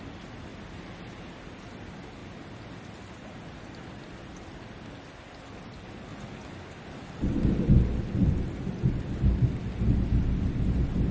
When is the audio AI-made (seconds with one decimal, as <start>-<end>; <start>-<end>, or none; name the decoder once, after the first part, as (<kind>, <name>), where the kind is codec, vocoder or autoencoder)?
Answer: none